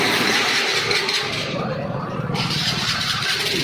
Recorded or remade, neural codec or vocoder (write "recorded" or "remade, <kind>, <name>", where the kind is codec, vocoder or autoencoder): remade, vocoder, BigVGAN v2